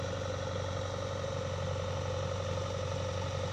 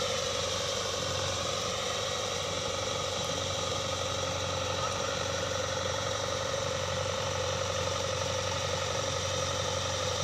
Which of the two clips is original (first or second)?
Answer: first